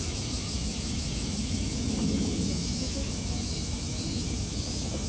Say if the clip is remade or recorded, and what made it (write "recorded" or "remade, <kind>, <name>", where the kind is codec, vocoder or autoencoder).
remade, autoencoder, DAC-VAE